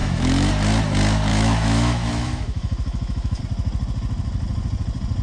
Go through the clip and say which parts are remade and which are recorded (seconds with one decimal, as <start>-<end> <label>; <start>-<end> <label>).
0.0-0.5 remade; 0.5-1.3 recorded; 1.3-3.4 remade; 3.4-5.2 recorded

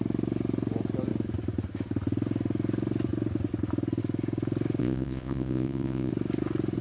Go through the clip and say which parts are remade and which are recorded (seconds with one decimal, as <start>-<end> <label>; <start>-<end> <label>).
0.0-4.8 recorded; 4.8-6.1 remade; 6.1-6.8 recorded

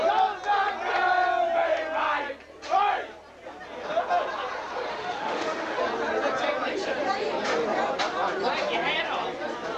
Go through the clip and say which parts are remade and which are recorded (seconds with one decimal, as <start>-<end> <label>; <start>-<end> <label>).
0.0-4.9 recorded; 4.9-5.8 remade; 5.8-9.8 recorded

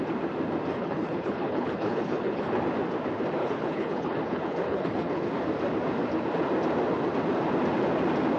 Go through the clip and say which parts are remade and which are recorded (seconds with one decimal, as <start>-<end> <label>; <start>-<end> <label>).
0.0-0.7 recorded; 0.7-2.6 remade; 2.6-3.4 recorded; 3.4-5.3 remade; 5.3-8.4 recorded

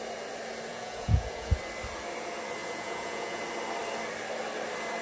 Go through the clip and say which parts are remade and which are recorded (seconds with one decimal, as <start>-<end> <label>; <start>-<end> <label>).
0.0-0.7 recorded; 0.7-1.5 remade; 1.5-2.6 recorded; 2.6-3.4 remade; 3.4-5.0 recorded

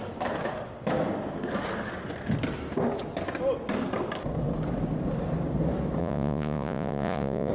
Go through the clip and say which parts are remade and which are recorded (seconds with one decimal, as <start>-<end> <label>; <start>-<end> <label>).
0.0-6.0 recorded; 6.0-7.5 remade

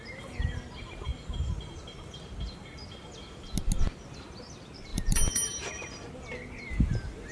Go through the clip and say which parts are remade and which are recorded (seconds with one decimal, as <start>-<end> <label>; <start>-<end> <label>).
0.0-1.1 recorded; 1.1-2.5 remade; 2.5-4.9 recorded; 4.9-6.1 remade; 6.1-7.3 recorded